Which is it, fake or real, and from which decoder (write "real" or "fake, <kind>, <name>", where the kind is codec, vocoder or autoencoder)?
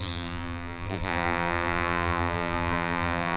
fake, vocoder, BigVGAN v2